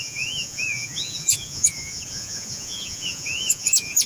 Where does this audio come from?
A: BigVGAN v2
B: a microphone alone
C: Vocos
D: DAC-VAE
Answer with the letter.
C